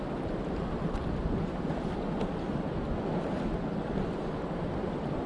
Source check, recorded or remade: remade